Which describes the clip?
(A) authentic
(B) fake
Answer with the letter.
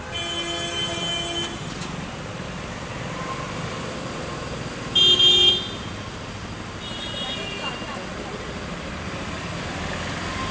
A